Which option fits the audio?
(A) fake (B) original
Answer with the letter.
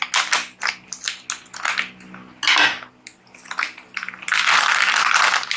B